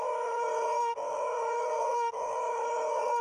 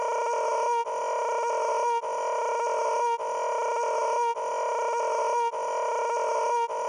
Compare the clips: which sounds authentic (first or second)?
second